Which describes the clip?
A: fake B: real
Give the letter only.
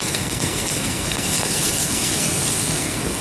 A